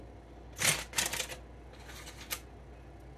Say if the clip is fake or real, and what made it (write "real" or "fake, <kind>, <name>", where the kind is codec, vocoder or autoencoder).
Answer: real